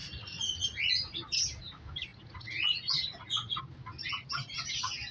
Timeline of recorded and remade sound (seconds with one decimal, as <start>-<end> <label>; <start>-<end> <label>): 0.0-0.9 remade; 0.9-2.1 recorded; 2.1-3.6 remade; 3.6-5.1 recorded